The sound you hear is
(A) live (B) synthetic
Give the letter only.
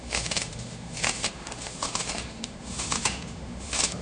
B